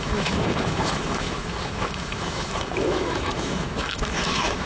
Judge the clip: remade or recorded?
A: remade